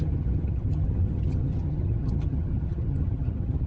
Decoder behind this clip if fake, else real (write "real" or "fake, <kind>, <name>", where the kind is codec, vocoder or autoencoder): fake, vocoder, HiFi-GAN